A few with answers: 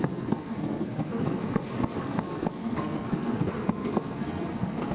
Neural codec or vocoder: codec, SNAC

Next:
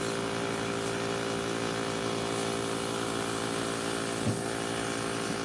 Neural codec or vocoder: none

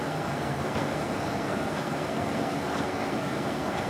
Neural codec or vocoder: codec, SNAC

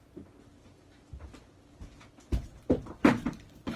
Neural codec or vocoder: none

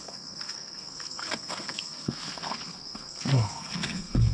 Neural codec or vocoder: codec, SNAC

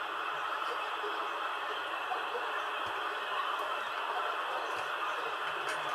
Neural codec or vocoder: none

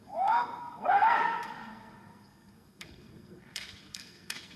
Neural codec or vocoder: codec, SNAC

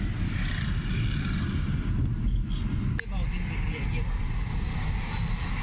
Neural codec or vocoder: none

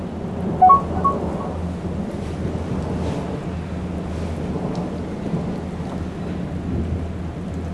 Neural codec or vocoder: none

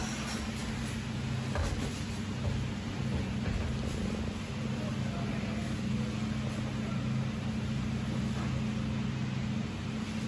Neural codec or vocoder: none